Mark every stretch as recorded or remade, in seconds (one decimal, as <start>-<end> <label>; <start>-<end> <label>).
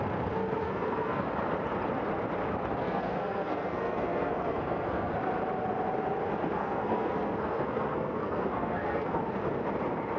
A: 0.0-0.6 recorded; 0.6-1.3 remade; 1.3-2.8 recorded; 2.8-5.1 remade; 5.1-6.6 recorded; 6.6-9.2 remade; 9.2-10.2 recorded